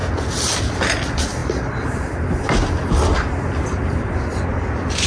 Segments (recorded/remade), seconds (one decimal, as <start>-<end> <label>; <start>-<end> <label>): 0.0-5.1 recorded